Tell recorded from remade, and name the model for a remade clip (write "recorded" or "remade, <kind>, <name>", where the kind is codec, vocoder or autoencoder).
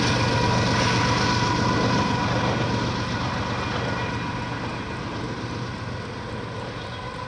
recorded